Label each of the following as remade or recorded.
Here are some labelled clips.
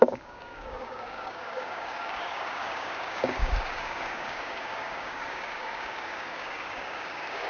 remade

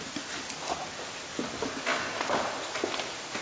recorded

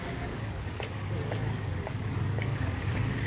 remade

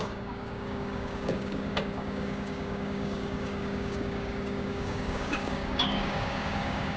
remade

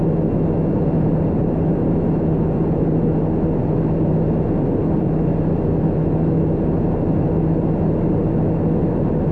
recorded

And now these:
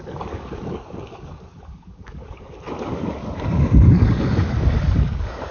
remade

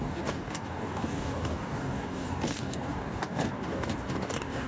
remade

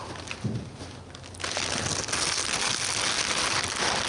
recorded